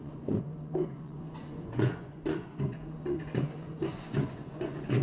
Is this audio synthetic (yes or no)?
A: yes